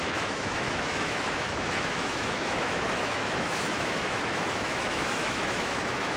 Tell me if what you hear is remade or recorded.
remade